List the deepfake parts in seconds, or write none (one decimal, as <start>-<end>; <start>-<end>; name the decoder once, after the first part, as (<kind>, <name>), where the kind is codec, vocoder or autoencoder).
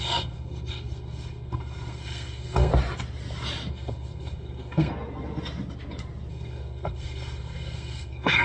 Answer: 0.0-2.7 (codec, SNAC); 3.7-4.9; 6.3-8.4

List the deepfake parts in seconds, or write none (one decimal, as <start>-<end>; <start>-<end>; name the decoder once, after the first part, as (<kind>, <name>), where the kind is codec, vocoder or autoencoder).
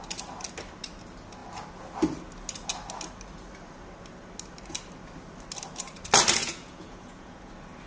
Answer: 6.4-7.5 (vocoder, Vocos)